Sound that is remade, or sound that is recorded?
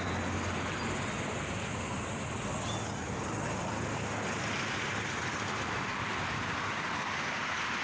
recorded